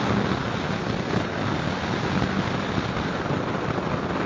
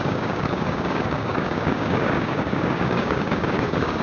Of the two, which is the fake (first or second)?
second